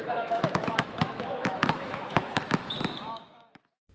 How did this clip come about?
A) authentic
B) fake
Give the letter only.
B